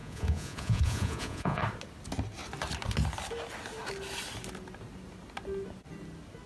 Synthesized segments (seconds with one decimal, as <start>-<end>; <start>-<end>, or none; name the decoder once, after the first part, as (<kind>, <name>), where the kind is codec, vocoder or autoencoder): 0.0-1.6 (vocoder, Vocos)